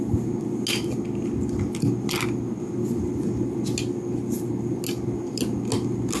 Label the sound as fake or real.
real